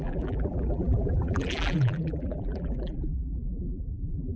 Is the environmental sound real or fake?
fake